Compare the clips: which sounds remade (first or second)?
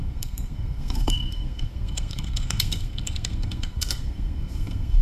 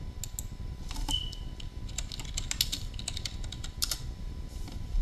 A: first